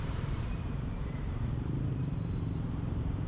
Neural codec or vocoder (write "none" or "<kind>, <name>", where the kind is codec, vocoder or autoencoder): vocoder, BigVGAN v2